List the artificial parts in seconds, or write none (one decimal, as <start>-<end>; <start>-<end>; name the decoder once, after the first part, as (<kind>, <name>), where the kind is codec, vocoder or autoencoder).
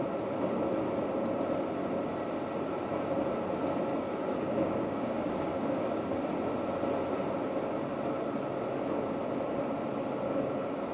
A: 3.9-6.2 (codec, DAC)